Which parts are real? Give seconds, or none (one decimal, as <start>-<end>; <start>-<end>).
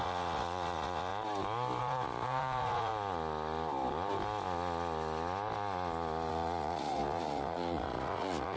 1.1-1.8; 2.9-6.3